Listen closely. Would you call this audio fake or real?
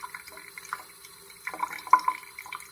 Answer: real